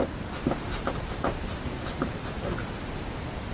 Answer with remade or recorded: recorded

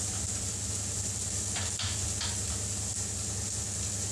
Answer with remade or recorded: recorded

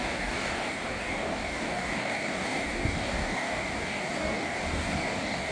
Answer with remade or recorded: remade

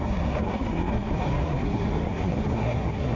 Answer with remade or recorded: remade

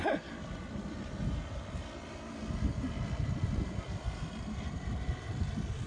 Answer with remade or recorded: recorded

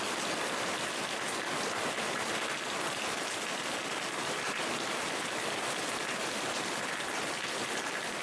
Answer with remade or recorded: recorded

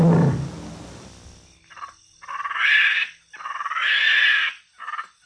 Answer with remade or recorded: recorded